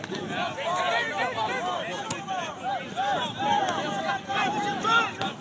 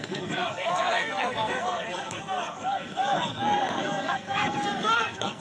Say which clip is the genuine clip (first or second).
first